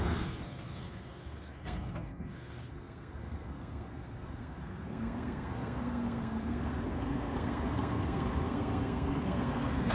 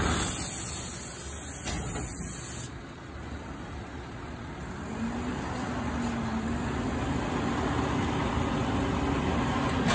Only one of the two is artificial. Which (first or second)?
first